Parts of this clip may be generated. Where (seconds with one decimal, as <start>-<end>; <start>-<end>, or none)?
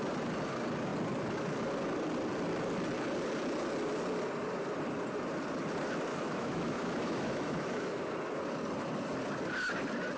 6.1-8.1